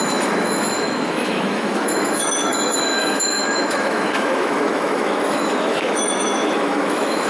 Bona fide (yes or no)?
no